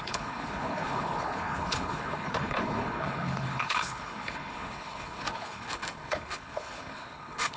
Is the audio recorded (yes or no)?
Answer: no